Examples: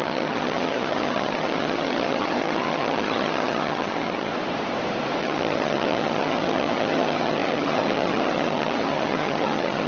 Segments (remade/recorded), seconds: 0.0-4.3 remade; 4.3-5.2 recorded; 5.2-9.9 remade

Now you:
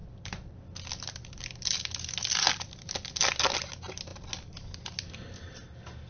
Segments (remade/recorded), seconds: 0.0-0.5 remade; 0.5-2.2 recorded; 2.2-2.9 remade; 2.9-6.1 recorded

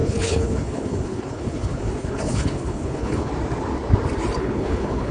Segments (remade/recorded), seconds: 0.0-3.3 remade; 3.3-4.4 recorded; 4.4-5.1 remade

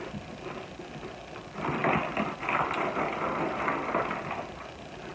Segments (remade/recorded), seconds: 0.0-5.1 recorded